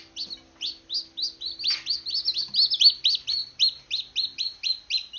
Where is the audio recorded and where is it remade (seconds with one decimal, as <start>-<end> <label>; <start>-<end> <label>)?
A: 0.0-5.2 recorded